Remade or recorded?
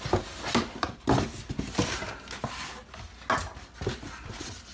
recorded